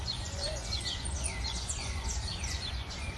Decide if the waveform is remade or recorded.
remade